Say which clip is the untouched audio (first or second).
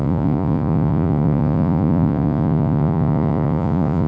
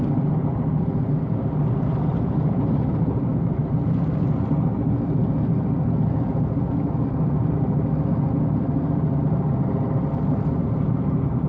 second